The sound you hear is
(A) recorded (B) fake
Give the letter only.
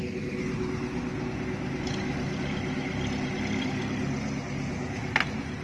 A